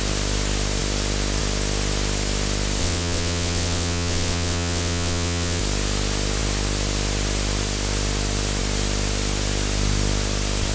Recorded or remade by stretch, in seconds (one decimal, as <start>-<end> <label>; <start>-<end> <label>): 0.0-2.8 recorded; 2.8-5.6 remade; 5.6-10.7 recorded